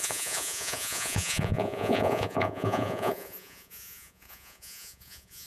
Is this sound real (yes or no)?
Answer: no